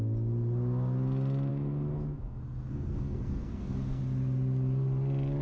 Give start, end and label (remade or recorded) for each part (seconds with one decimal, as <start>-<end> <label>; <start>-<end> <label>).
0.0-1.5 recorded; 1.5-4.0 remade; 4.0-5.4 recorded